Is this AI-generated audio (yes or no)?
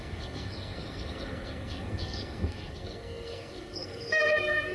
yes